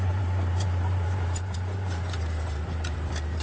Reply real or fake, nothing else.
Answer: fake